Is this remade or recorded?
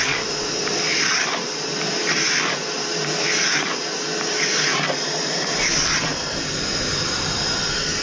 remade